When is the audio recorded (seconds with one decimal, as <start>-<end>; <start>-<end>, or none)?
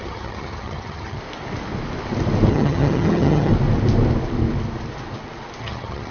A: 1.2-2.5; 3.5-5.6